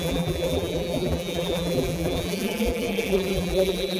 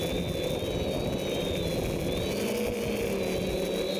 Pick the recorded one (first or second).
second